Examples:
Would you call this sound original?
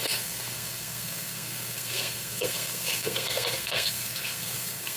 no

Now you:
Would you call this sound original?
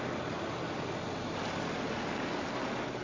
yes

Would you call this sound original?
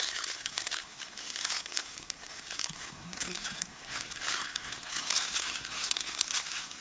no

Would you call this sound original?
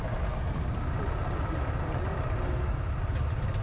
yes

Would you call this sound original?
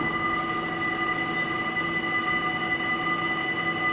yes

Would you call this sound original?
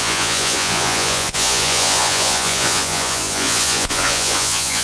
no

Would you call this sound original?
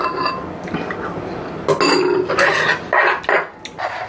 yes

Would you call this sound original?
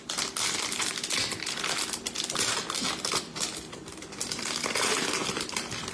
yes